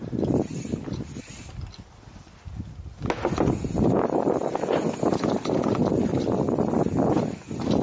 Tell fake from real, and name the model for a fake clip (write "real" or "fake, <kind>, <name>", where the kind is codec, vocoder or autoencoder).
real